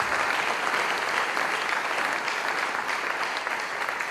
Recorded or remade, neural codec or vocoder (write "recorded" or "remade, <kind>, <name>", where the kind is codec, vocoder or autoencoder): recorded